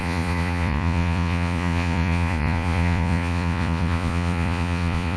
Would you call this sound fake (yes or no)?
yes